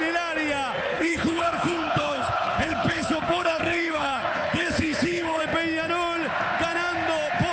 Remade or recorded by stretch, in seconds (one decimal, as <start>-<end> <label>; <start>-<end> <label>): 0.0-0.9 recorded; 0.9-5.4 remade; 5.4-7.5 recorded